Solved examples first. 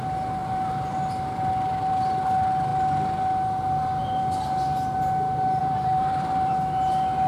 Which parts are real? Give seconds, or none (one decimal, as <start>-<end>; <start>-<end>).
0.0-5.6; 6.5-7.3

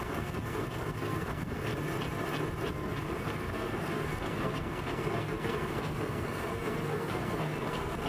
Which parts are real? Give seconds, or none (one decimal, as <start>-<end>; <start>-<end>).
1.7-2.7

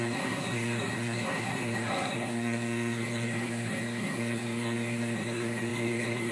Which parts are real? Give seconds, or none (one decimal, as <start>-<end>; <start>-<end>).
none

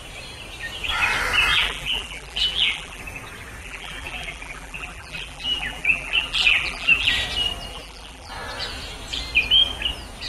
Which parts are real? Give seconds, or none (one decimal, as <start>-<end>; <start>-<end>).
0.0-1.5; 3.0-3.6; 7.1-7.7; 8.3-10.3

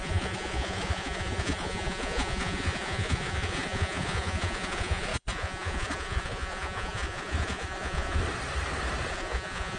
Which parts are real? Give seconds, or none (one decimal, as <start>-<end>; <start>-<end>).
8.2-9.1